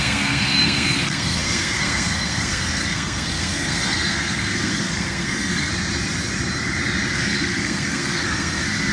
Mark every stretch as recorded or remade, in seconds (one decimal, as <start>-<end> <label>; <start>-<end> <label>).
0.0-5.7 remade; 5.7-7.1 recorded; 7.1-8.9 remade